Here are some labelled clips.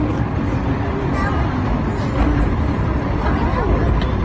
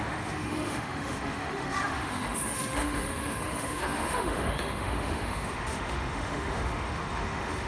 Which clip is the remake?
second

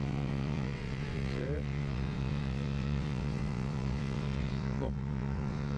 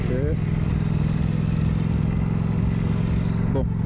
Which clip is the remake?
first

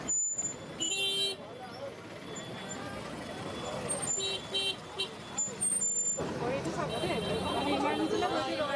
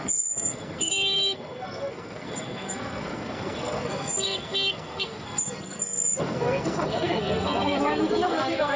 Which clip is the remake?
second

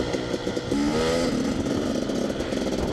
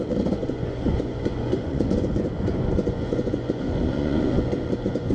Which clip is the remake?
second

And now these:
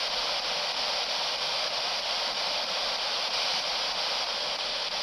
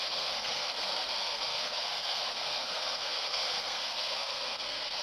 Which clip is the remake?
second